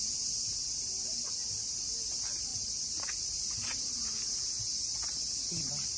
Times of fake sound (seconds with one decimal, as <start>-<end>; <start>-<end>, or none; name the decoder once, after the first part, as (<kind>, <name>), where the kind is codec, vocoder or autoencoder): none